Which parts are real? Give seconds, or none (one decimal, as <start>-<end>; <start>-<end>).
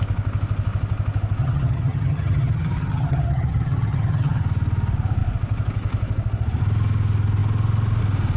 0.0-1.4; 4.4-8.4